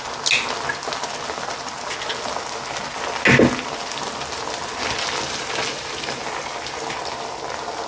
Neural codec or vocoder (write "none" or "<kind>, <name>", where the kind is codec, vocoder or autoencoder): none